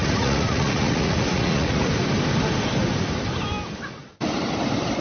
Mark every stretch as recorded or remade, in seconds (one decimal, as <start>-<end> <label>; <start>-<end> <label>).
0.0-1.9 remade; 1.9-5.0 recorded